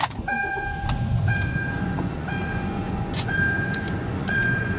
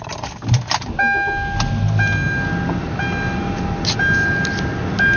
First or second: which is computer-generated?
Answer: first